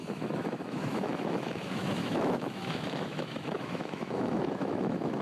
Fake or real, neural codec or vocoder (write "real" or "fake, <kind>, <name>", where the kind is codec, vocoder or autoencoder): fake, autoencoder, DAC-VAE